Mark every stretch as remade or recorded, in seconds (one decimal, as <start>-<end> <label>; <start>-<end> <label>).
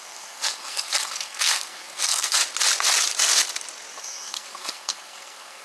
0.0-2.4 remade; 2.4-4.0 recorded; 4.0-5.6 remade